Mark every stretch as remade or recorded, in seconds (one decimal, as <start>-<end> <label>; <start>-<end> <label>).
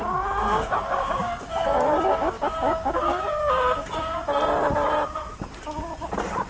0.0-0.4 recorded; 0.4-4.3 remade; 4.3-6.5 recorded